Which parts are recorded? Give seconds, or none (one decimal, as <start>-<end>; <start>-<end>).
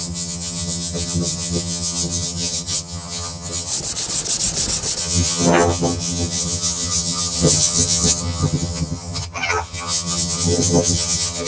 3.7-5.0